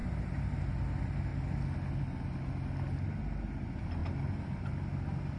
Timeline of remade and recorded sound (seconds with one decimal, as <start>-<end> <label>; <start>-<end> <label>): 0.0-0.6 remade; 0.6-5.4 recorded